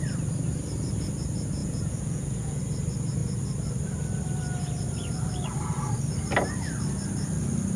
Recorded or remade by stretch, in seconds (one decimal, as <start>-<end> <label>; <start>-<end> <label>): 0.0-1.6 recorded; 1.6-2.6 remade; 2.6-7.8 recorded